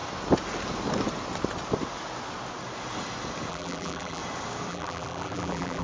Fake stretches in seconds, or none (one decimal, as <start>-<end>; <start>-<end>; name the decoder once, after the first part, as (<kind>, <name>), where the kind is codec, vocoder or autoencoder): 3.5-4.2 (vocoder, BigVGAN v2); 4.7-5.8